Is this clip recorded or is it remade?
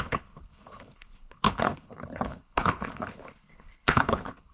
remade